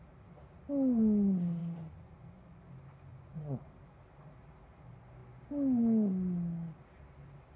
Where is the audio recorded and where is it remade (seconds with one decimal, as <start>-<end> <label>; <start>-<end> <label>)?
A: 0.0-1.6 recorded; 1.6-2.6 remade; 2.6-3.1 recorded; 3.1-3.6 remade; 3.6-7.6 recorded